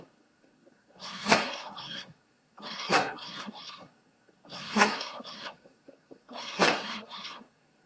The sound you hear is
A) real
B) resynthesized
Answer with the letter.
B